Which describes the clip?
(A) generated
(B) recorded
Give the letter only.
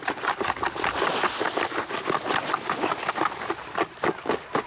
B